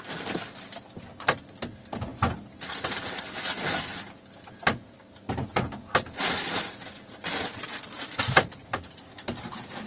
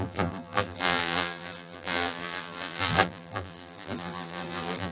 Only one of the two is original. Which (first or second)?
first